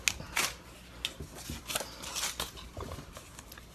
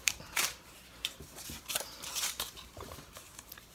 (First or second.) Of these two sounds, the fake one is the second